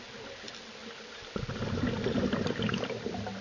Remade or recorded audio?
recorded